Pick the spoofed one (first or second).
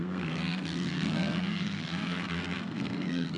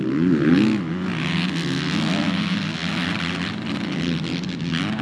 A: first